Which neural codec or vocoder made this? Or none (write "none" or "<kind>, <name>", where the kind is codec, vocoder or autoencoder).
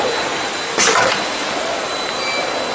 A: none